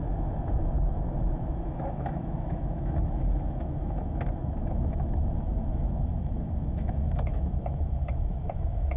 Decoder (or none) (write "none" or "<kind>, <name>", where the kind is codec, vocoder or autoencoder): autoencoder, DAC-VAE